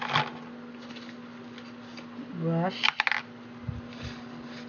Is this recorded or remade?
recorded